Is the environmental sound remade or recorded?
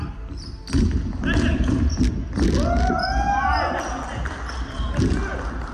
recorded